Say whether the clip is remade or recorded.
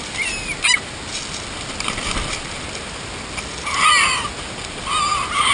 recorded